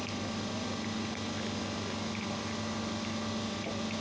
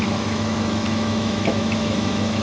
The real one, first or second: first